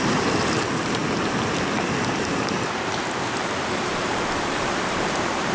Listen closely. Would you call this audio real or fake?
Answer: fake